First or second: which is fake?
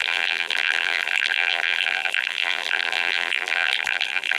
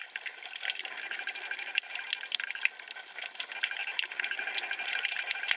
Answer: first